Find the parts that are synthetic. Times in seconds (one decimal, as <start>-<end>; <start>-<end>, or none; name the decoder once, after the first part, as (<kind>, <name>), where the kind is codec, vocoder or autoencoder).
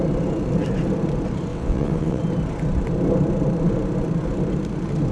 1.5-2.2 (vocoder, WaveNeXt)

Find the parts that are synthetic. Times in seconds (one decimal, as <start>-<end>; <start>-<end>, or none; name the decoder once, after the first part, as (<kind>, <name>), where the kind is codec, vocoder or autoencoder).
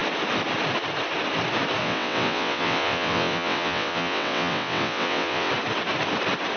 1.8-5.5 (vocoder, WaveNeXt)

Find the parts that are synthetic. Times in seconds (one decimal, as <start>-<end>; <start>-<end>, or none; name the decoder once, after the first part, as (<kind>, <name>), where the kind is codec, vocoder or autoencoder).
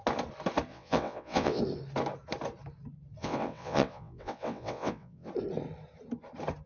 0.7-1.6 (vocoder, WaveNeXt); 3.2-5.3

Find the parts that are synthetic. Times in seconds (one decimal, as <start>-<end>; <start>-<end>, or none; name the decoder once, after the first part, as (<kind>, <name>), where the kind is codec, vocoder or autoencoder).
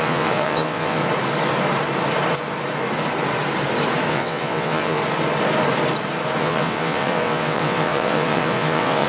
0.0-1.0 (vocoder, WaveNeXt); 4.1-5.0; 6.4-9.1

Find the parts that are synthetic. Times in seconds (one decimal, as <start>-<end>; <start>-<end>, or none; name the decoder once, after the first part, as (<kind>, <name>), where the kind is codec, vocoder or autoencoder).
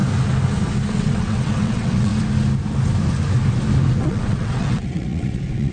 0.9-2.1 (vocoder, WaveNeXt); 4.0-5.7